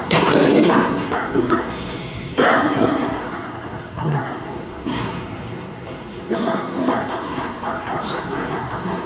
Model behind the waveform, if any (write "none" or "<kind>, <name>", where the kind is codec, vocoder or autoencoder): codec, SNAC